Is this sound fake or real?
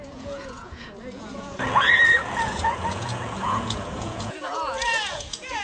fake